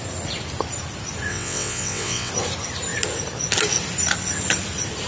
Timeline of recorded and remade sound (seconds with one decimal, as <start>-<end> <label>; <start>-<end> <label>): 0.0-1.3 recorded; 1.3-2.3 remade; 2.3-5.1 recorded